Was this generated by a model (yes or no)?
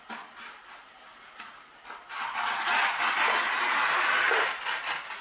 no